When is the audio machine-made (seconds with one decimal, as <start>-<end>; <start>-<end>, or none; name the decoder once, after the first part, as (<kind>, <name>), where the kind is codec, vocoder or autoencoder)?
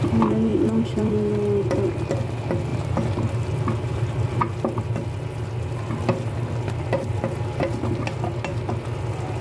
0.5-1.1 (vocoder, BigVGAN v2)